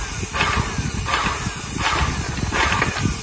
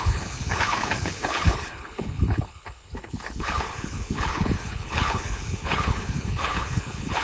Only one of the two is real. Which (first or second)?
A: first